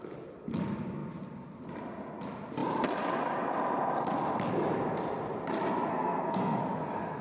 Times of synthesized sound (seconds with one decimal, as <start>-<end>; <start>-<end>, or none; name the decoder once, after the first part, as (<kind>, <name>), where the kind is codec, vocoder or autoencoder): 5.9-6.6 (codec, SNAC)